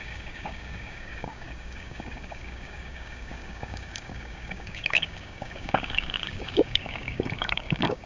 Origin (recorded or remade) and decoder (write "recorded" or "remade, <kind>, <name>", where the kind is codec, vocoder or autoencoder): remade, codec, DAC